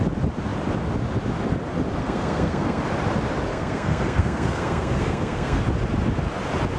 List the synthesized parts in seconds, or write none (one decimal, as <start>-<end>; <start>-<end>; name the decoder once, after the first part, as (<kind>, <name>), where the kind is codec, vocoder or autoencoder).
2.0-2.8 (codec, SNAC); 3.5-5.6